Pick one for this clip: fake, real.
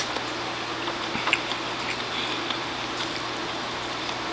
real